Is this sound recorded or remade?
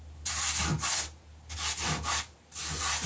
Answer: recorded